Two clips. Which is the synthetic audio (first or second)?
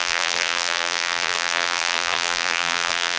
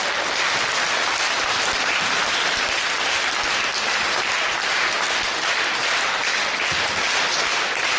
first